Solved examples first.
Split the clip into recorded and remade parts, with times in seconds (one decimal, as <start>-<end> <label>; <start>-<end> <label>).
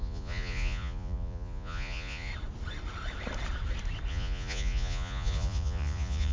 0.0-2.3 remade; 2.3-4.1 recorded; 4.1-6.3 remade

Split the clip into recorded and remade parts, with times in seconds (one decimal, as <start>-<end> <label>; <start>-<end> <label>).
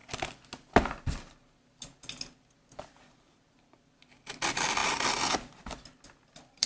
0.0-6.7 recorded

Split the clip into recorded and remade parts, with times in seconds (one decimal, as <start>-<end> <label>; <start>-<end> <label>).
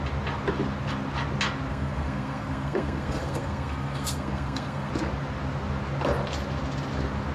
0.0-1.7 recorded; 1.7-4.9 remade; 4.9-7.3 recorded